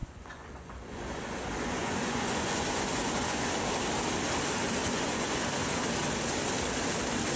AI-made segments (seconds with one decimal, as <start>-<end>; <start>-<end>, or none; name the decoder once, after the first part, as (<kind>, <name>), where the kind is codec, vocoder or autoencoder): 0.0-3.5 (vocoder, Vocos); 4.8-5.4